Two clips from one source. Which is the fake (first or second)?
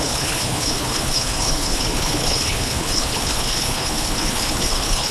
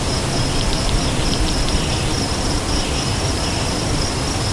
first